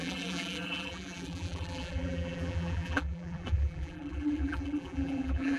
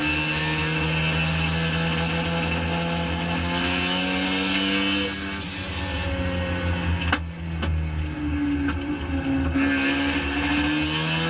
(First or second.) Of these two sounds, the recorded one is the second